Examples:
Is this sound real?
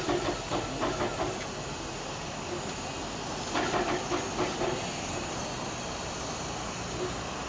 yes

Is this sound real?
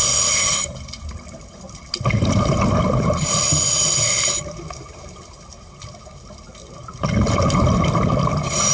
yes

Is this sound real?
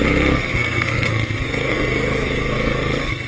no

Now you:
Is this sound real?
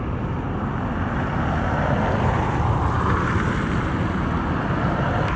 yes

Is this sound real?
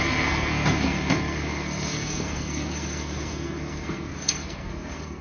no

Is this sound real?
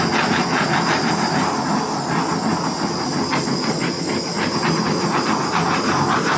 yes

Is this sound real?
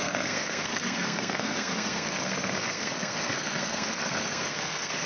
no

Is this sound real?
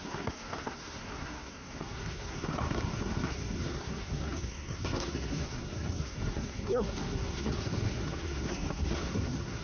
no